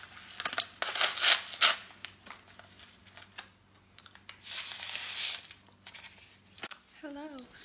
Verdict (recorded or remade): recorded